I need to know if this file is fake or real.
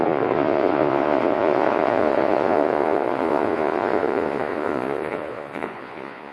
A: fake